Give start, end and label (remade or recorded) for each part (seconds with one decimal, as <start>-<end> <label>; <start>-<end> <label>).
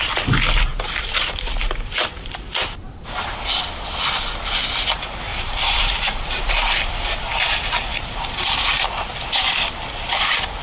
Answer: 0.0-0.7 recorded; 0.7-2.3 remade; 2.3-5.3 recorded; 5.3-6.5 remade; 6.5-7.9 recorded; 7.9-8.6 remade; 8.6-10.6 recorded